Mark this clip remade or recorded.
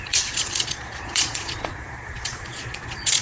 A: remade